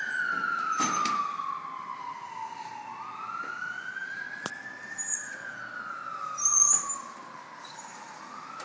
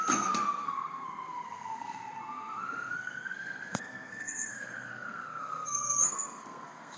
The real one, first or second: first